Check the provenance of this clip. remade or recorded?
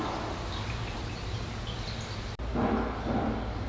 recorded